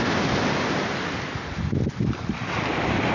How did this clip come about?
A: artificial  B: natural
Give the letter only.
B